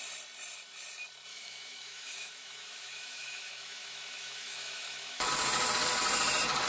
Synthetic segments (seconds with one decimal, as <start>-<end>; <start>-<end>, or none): 1.3-5.3